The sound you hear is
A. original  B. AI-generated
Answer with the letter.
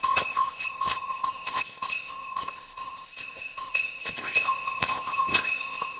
B